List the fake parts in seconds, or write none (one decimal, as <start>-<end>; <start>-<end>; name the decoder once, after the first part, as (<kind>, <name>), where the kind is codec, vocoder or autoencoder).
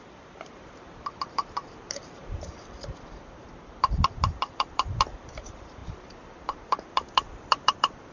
0.0-8.1 (vocoder, BigVGAN v2)